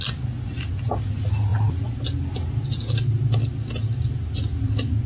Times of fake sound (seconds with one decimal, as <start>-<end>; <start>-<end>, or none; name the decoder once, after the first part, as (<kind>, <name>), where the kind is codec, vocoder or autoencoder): none